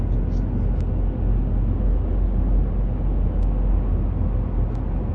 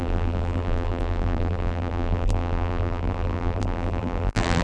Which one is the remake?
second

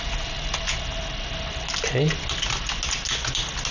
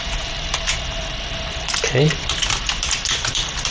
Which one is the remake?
second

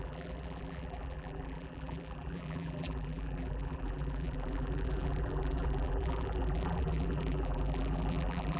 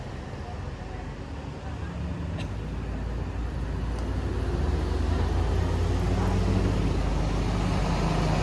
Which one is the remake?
first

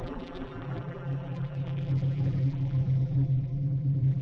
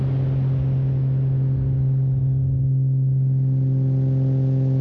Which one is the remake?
first